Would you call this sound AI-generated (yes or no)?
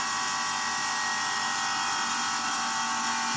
no